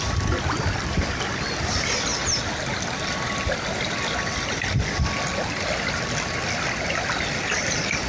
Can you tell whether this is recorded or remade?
recorded